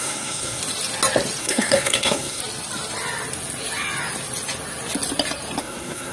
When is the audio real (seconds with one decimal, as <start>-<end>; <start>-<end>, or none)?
0.6-1.4; 2.4-5.6